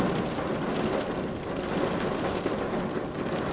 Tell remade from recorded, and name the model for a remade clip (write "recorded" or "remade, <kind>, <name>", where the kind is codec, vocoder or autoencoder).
recorded